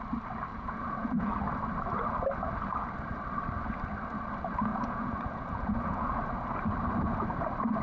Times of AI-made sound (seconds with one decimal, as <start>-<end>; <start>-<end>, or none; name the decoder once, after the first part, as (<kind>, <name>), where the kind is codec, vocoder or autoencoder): 0.5-1.3 (vocoder, Vocos); 4.7-6.1